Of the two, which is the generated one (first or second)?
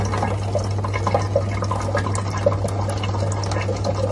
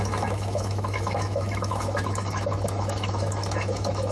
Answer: second